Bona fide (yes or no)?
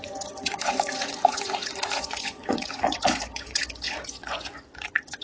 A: no